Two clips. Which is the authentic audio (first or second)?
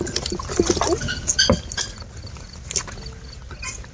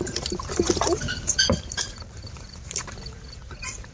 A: first